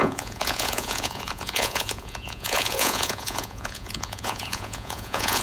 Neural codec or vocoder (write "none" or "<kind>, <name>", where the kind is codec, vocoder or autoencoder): vocoder, Vocos